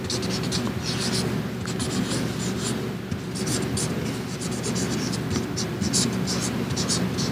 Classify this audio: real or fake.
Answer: real